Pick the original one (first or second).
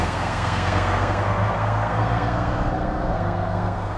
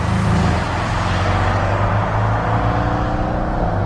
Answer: second